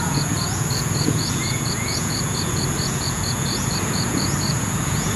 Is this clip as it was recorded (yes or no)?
no